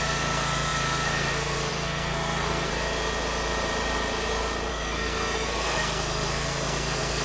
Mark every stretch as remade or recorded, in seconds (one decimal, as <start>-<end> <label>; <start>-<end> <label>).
0.0-2.7 remade; 2.7-4.7 recorded; 4.7-7.2 remade